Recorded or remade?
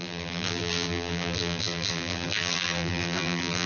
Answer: remade